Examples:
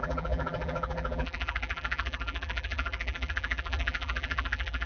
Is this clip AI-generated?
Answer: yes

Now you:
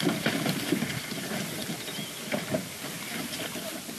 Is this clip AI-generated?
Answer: no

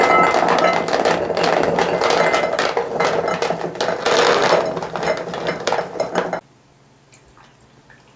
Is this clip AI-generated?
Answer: no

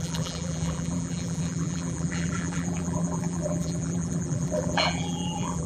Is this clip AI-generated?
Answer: yes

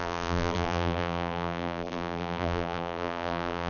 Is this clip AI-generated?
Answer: yes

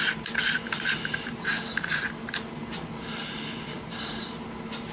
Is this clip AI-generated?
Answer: yes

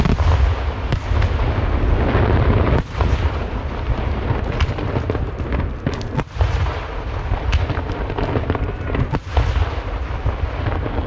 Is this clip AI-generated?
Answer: no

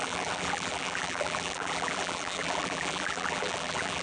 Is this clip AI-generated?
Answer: yes